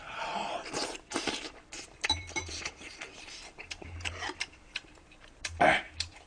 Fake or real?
fake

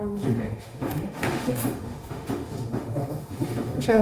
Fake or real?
fake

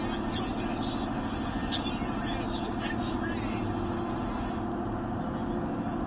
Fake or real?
real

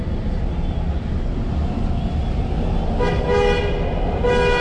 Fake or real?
real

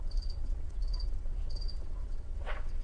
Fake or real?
fake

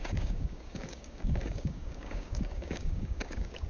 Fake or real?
fake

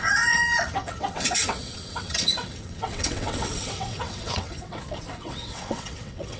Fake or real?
fake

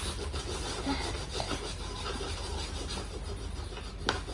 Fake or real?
real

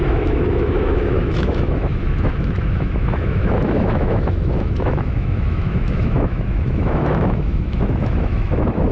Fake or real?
fake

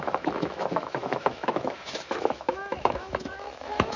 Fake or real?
fake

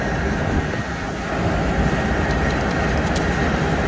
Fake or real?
real